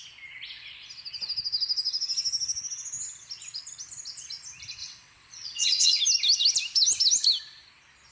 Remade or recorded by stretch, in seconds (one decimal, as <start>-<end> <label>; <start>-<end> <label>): 0.0-4.8 recorded; 4.8-6.0 remade; 6.0-8.1 recorded

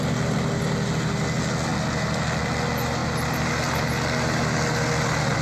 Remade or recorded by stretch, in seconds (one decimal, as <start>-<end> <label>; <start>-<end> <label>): 0.0-5.4 recorded

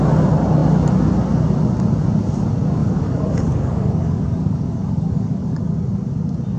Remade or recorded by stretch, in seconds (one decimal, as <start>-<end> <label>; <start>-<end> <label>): 0.0-2.8 recorded; 2.8-5.6 remade; 5.6-6.6 recorded